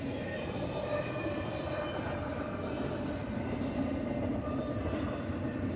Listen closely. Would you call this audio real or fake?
real